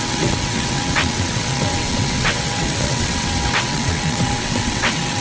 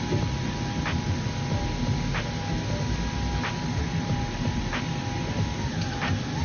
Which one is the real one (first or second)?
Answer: second